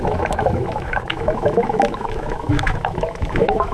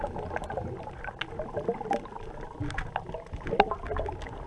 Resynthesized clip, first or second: first